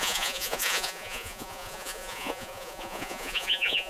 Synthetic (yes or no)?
yes